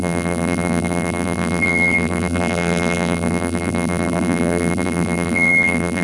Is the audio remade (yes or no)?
yes